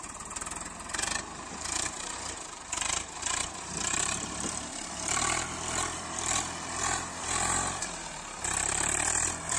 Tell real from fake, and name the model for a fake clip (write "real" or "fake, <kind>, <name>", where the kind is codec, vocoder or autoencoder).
fake, vocoder, BigVGAN v2